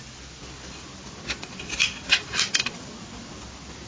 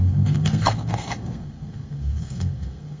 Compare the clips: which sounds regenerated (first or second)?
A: second